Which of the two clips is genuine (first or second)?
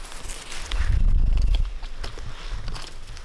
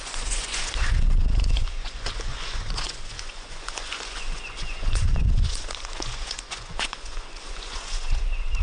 first